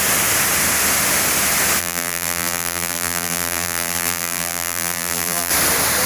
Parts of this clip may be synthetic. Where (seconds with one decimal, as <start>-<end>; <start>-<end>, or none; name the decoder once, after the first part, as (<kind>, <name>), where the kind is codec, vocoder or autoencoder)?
1.8-5.5 (vocoder, BigVGAN v2)